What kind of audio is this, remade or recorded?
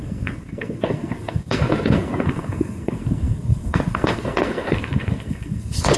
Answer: remade